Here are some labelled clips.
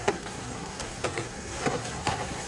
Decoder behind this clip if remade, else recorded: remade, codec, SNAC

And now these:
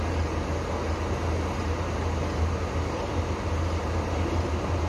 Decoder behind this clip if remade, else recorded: recorded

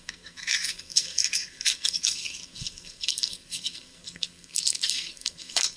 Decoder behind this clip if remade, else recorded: remade, codec, SNAC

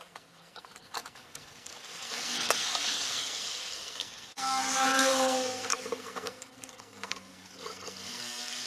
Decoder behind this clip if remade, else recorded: remade, codec, SNAC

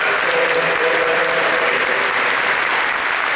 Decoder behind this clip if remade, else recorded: recorded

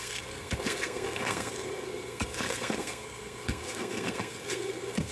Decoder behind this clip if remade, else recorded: remade, codec, SNAC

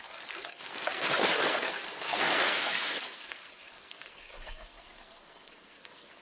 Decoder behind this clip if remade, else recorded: remade, codec, SNAC